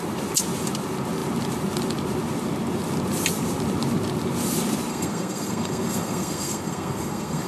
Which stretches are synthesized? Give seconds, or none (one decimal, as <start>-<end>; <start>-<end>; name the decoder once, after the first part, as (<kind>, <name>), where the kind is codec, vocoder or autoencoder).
4.9-7.5 (codec, SNAC)